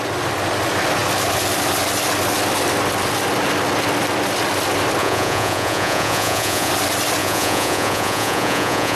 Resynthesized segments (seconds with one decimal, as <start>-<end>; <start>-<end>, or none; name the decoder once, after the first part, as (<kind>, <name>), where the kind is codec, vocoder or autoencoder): 5.0-6.7 (vocoder, Vocos); 7.2-9.0